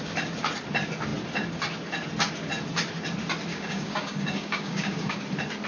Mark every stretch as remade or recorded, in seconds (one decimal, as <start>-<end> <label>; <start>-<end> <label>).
0.0-3.5 recorded; 3.5-5.2 remade; 5.2-5.7 recorded